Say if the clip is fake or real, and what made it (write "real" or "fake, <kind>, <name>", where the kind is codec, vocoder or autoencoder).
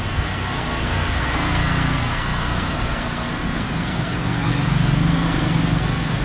fake, codec, SNAC